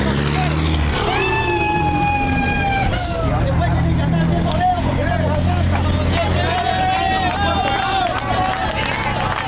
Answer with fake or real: real